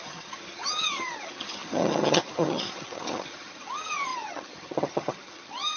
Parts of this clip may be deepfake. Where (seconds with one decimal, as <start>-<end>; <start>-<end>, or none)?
0.0-5.8